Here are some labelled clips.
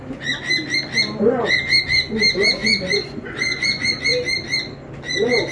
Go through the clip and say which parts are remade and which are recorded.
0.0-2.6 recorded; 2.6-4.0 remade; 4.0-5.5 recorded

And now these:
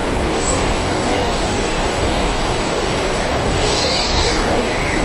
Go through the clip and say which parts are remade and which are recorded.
0.0-5.0 remade

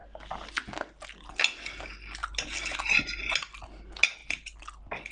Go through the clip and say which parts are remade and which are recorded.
0.0-5.1 recorded

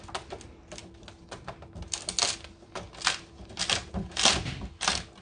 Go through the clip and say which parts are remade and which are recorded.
0.0-5.2 recorded